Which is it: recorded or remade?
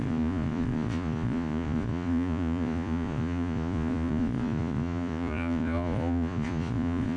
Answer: remade